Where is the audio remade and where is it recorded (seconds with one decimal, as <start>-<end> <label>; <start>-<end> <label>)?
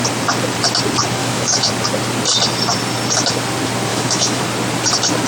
0.0-1.2 recorded; 1.2-1.7 remade; 1.7-3.9 recorded; 3.9-4.4 remade; 4.4-5.3 recorded